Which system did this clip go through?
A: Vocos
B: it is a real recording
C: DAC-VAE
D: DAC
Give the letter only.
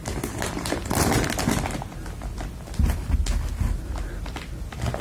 B